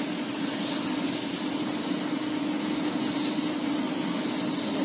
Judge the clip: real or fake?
real